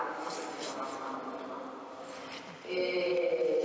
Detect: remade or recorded recorded